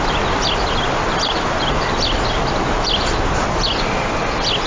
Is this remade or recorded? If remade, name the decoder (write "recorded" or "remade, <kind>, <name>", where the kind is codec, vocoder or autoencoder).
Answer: recorded